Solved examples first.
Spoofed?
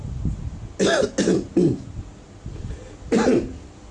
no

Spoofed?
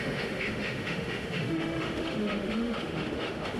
yes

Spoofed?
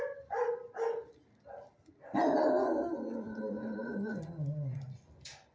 no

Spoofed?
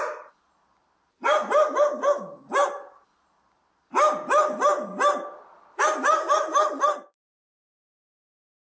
no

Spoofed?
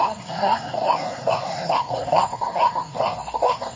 yes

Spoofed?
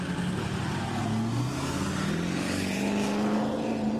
no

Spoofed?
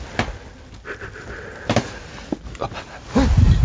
no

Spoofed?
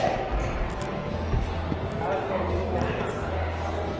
no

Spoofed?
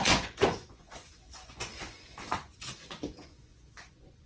yes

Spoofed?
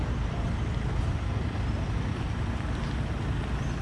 no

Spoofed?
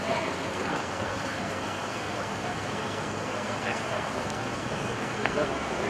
yes